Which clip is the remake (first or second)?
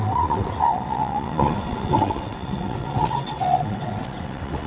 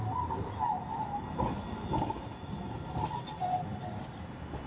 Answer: first